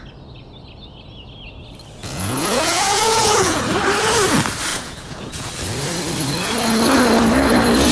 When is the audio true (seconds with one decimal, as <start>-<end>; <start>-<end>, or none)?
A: 0.0-2.0; 3.6-4.7; 5.5-7.9